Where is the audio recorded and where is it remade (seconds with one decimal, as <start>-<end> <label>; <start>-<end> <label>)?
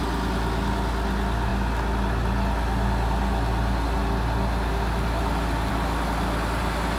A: 0.0-7.0 recorded